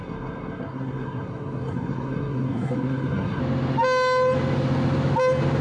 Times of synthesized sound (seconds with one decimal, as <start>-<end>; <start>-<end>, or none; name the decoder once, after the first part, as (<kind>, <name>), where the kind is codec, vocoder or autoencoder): 0.0-3.4 (codec, SNAC)